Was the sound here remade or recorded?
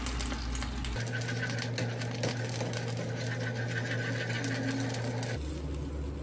recorded